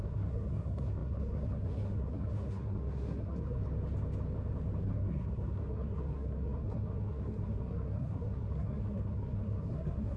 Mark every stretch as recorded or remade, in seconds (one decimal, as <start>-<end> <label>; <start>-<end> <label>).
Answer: 0.0-3.6 remade; 3.6-4.8 recorded; 4.8-10.2 remade